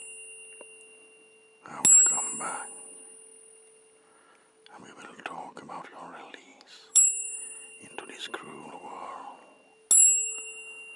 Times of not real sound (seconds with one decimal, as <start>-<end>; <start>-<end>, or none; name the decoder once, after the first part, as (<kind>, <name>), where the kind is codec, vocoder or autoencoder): 6.5-9.3 (vocoder, BigVGAN v2)